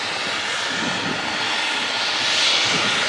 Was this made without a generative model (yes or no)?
yes